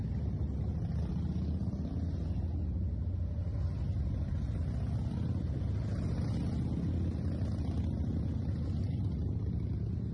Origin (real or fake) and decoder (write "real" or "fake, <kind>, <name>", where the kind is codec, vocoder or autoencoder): real